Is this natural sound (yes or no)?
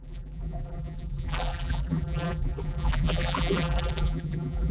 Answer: no